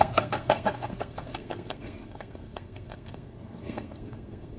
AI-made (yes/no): yes